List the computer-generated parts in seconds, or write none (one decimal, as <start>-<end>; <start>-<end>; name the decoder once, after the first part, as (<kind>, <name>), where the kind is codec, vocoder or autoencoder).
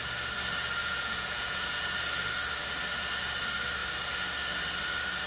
0.8-2.0 (vocoder, Vocos)